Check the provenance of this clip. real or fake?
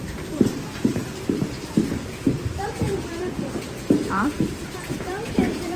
fake